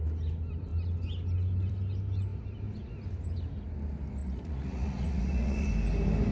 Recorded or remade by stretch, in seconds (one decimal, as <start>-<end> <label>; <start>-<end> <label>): 0.0-4.2 recorded; 4.2-5.7 remade; 5.7-6.3 recorded